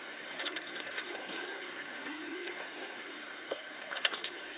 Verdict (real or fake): fake